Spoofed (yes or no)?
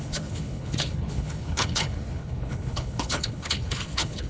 yes